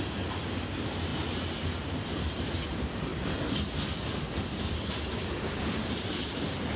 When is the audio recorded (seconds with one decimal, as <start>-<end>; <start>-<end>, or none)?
1.1-2.2; 3.1-4.3